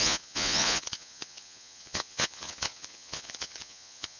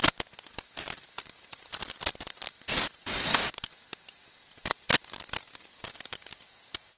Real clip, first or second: second